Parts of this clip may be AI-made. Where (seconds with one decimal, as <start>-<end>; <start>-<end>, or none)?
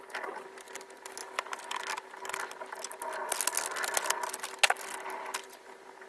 1.2-1.8